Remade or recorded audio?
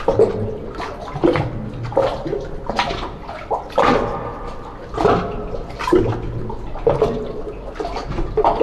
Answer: recorded